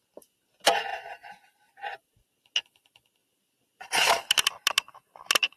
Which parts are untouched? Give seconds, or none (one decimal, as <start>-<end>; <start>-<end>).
0.0-0.9; 2.0-5.6